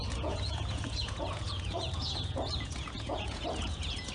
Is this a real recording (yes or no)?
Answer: no